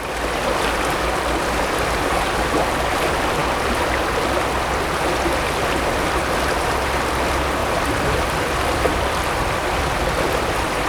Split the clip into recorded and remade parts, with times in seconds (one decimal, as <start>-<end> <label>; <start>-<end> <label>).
0.0-7.6 recorded; 7.6-9.8 remade; 9.8-10.9 recorded